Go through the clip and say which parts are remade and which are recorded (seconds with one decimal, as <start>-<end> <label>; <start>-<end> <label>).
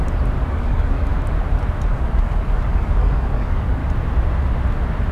0.0-0.5 recorded; 0.5-1.1 remade; 1.1-1.9 recorded; 1.9-3.8 remade; 3.8-5.1 recorded